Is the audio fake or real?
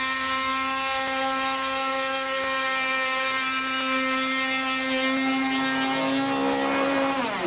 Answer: real